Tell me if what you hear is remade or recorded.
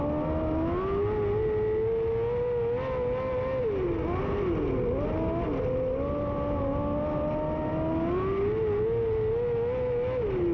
recorded